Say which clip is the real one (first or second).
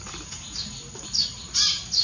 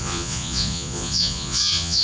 first